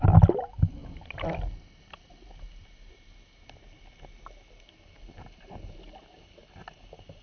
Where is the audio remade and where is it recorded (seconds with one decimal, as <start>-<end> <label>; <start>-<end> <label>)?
0.0-7.2 recorded